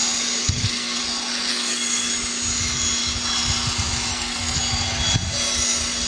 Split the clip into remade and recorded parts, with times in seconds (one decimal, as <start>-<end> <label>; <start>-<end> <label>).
0.0-0.4 recorded; 0.4-1.0 remade; 1.0-1.5 recorded; 1.5-2.1 remade; 2.1-4.1 recorded; 4.1-4.6 remade; 4.6-6.1 recorded